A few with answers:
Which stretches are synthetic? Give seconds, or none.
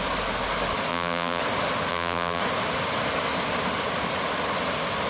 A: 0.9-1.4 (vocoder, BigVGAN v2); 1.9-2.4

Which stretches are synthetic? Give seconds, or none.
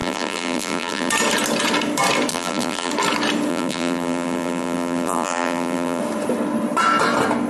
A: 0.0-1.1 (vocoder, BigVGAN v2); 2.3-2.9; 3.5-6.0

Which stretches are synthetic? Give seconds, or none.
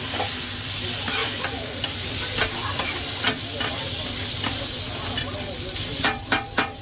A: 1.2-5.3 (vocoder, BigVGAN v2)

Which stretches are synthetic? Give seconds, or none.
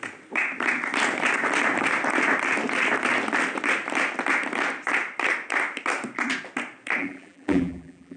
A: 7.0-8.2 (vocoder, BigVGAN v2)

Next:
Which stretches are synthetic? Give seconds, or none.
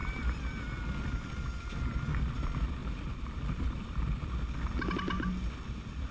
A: 2.8-3.9 (vocoder, BigVGAN v2)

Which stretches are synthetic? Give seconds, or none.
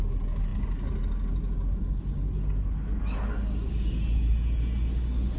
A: none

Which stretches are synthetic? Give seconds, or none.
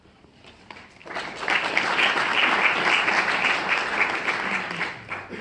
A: none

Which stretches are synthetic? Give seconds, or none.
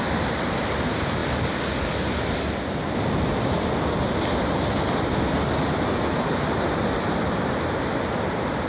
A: none